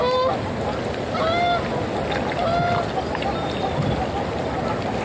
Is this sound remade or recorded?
recorded